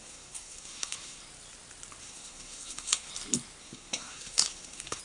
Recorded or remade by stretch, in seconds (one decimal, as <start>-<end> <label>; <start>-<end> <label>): 0.0-1.2 remade; 1.2-2.0 recorded; 2.0-3.1 remade; 3.1-3.6 recorded; 3.6-5.0 remade